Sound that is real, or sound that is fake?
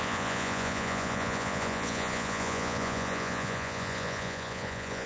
fake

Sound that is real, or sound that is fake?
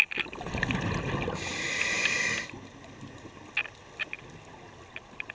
real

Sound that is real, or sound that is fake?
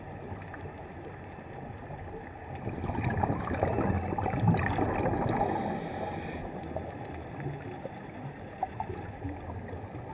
real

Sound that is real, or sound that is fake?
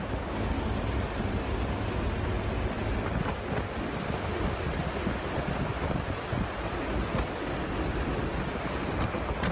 real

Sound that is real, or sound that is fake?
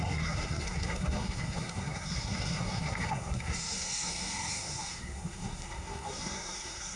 fake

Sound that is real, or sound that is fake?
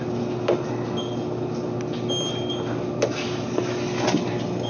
real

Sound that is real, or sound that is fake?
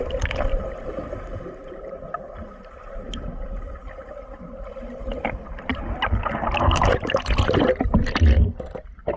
real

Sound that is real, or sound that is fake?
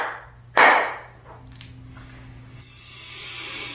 real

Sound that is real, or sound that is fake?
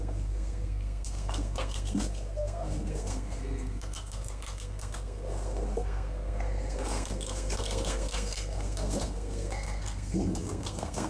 fake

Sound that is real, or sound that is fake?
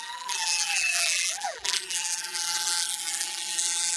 fake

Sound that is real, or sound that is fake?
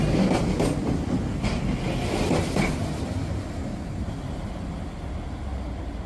real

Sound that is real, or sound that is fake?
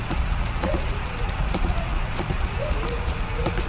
fake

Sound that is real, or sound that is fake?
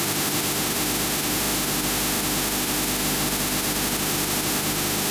fake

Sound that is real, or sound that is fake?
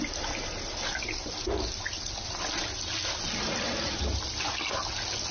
real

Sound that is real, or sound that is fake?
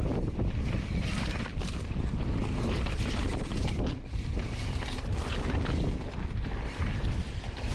real